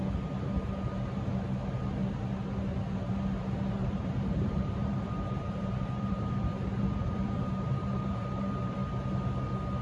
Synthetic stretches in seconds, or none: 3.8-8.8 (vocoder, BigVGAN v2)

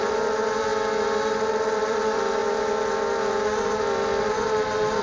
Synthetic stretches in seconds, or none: 0.0-0.7 (vocoder, BigVGAN v2); 1.4-2.4

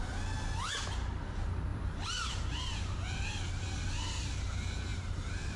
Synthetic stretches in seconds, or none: 1.7-3.0 (vocoder, BigVGAN v2); 4.9-5.6

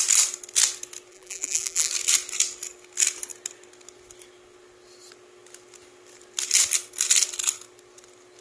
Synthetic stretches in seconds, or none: 1.1-1.9 (vocoder, BigVGAN v2)

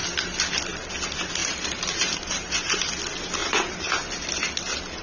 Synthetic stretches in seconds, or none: 1.4-2.9 (vocoder, BigVGAN v2); 3.4-3.9